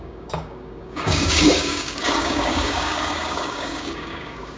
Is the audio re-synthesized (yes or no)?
yes